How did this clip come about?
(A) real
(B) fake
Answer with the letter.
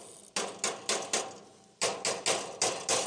A